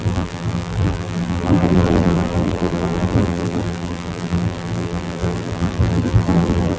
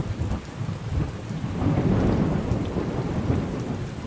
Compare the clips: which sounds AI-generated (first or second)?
first